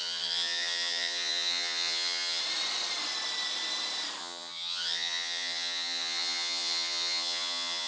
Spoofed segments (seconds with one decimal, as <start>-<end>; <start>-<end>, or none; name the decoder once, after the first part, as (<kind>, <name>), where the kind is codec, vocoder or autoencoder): 0.0-2.4 (vocoder, HiFi-GAN); 4.2-7.9